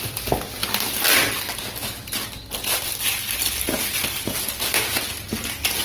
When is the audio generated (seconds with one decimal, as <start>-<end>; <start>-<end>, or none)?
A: none